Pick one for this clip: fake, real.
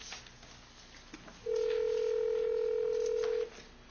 real